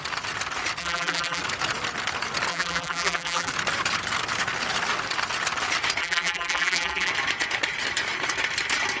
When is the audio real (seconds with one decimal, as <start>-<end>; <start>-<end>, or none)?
0.0-0.8; 1.4-2.5; 3.5-6.0; 7.1-9.0